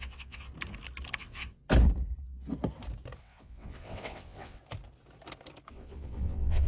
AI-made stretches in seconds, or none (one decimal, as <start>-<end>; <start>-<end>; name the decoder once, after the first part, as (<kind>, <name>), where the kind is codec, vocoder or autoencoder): 0.0-0.5 (vocoder, WaveNeXt); 1.2-1.6; 3.2-4.6; 5.7-6.7